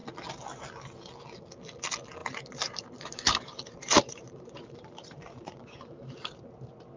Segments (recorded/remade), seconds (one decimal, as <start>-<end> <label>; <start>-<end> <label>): 0.0-2.2 recorded; 2.2-6.4 remade; 6.4-7.0 recorded